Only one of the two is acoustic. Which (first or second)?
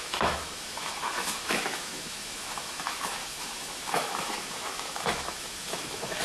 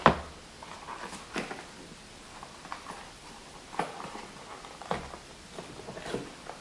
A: second